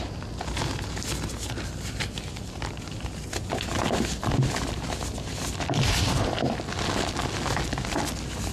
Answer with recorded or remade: recorded